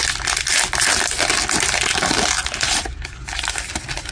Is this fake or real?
real